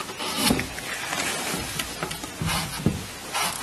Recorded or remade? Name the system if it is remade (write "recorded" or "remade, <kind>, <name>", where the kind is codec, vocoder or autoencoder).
recorded